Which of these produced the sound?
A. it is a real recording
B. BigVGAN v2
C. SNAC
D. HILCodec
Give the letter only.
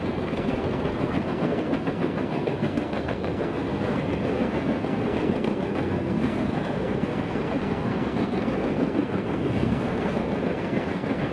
C